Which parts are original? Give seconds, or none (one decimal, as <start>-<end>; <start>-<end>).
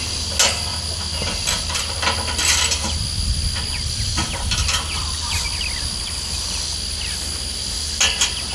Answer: 0.0-8.5